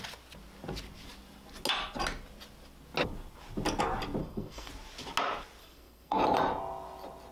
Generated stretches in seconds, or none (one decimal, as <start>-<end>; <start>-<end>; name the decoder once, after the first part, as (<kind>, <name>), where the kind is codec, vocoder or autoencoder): 4.2-4.7 (codec, SNAC); 5.6-6.2